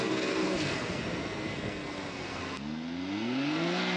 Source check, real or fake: fake